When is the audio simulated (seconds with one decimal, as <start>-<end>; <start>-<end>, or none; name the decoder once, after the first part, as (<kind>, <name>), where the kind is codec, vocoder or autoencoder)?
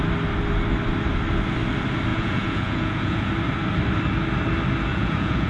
2.1-3.3 (vocoder, Vocos); 4.9-5.5